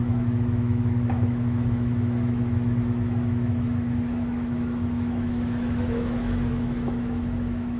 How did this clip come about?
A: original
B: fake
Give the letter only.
B